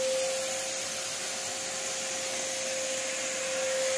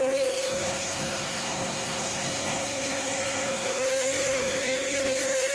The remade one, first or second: second